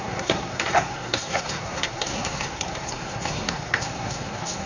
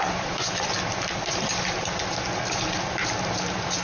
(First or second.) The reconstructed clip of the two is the first